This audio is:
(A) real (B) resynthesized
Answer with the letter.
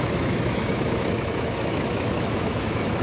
B